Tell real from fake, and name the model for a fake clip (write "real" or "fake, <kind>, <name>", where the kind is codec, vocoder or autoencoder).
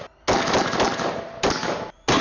real